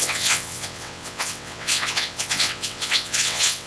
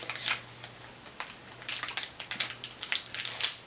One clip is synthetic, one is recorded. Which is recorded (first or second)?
second